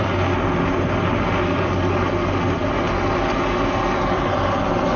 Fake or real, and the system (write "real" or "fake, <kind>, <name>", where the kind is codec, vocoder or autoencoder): real